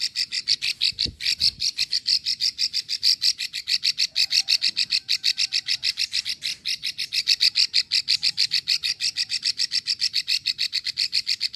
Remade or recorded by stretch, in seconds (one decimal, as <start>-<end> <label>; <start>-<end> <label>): 0.0-5.7 recorded; 5.7-6.2 remade; 6.2-11.6 recorded